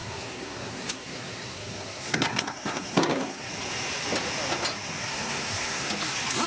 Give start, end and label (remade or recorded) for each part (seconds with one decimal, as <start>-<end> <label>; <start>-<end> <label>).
0.0-3.5 remade; 3.5-5.0 recorded; 5.0-5.9 remade; 5.9-6.5 recorded